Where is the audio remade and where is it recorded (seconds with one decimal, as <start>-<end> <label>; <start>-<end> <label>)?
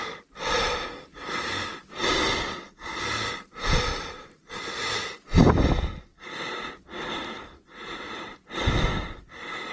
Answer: 0.0-3.9 recorded; 3.9-4.5 remade; 4.5-9.7 recorded